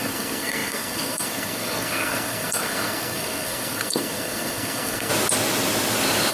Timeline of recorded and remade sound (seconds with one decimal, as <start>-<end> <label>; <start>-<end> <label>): 0.0-5.1 remade; 5.1-6.3 recorded